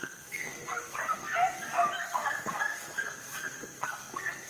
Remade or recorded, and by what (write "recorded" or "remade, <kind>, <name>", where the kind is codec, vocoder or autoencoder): remade, codec, SNAC